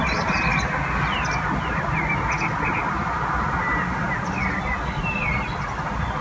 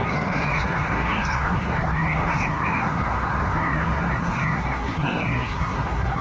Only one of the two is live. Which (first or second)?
first